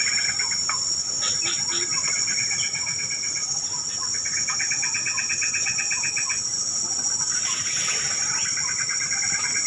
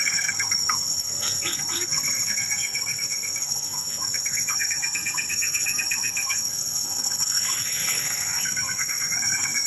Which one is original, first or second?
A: first